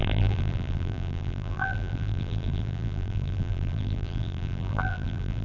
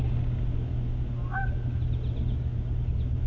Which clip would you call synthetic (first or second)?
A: first